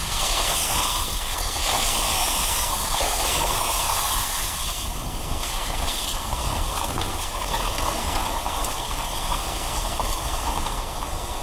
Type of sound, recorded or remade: remade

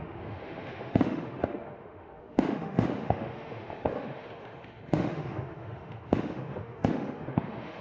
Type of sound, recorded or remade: remade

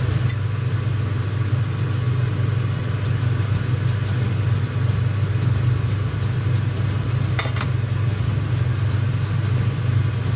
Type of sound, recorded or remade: recorded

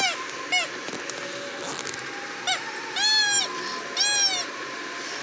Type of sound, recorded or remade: recorded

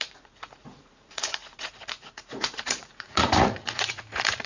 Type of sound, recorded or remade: remade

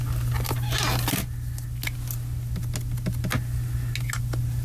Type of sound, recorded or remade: recorded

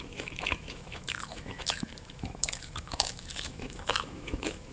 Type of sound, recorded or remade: remade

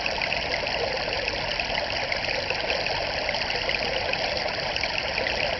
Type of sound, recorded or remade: recorded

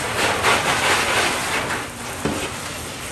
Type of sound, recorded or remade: recorded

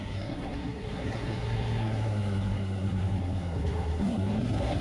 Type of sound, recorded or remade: remade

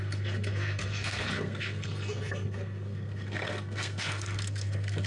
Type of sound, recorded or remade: remade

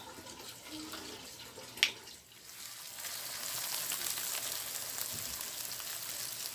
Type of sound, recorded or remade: recorded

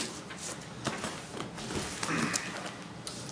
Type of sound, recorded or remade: recorded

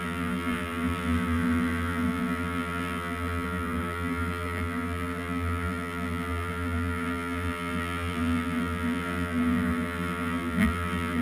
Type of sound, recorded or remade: remade